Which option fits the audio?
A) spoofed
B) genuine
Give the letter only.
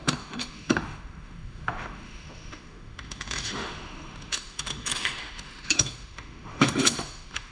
A